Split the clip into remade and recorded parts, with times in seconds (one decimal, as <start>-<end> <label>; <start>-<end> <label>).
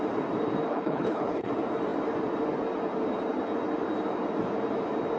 0.0-0.7 recorded; 0.7-1.5 remade; 1.5-5.2 recorded